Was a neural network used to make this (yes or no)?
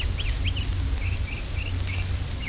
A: no